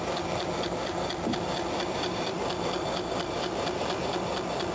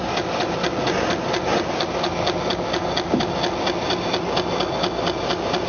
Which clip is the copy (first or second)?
first